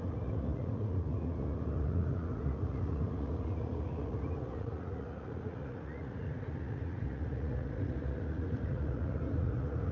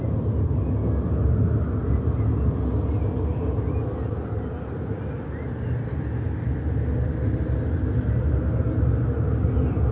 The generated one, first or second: first